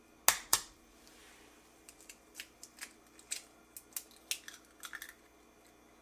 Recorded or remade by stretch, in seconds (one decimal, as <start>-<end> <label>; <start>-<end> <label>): 0.0-0.5 recorded; 0.5-3.6 remade; 3.6-6.0 recorded